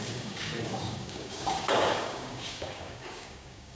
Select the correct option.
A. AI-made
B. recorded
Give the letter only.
A